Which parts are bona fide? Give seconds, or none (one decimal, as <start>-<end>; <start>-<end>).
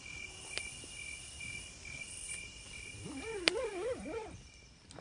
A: none